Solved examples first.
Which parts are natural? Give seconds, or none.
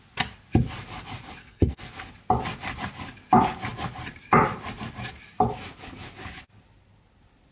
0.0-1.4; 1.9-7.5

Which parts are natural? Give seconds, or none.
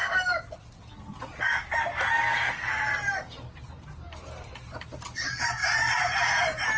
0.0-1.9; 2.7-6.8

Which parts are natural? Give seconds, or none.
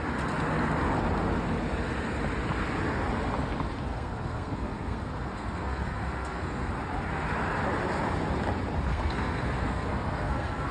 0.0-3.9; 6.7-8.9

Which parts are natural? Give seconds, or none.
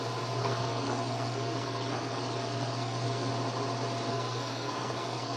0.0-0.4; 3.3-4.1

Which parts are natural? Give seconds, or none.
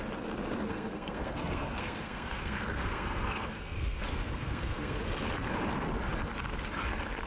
0.0-0.7; 5.0-7.3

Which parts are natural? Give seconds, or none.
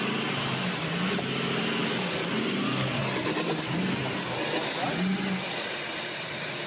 0.0-6.7